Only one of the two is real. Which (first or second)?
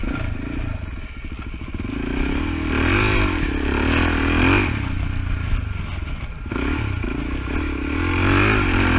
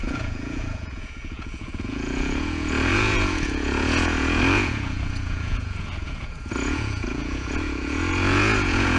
first